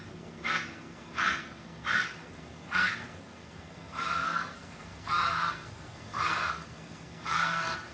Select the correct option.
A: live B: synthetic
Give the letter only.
B